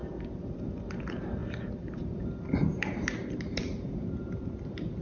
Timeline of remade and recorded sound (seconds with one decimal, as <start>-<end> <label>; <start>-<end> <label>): 0.0-0.8 remade; 0.8-2.6 recorded; 2.6-4.2 remade; 4.2-5.0 recorded